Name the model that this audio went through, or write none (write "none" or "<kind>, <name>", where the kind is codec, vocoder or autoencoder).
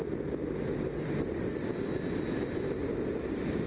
none